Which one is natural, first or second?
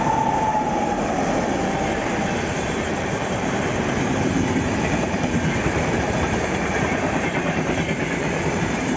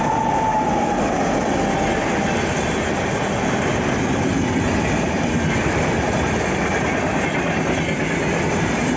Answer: second